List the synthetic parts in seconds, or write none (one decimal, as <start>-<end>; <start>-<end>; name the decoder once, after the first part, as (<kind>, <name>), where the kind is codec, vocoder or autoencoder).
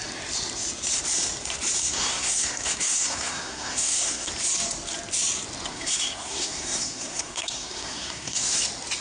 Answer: 1.8-4.3 (codec, SNAC); 5.7-8.6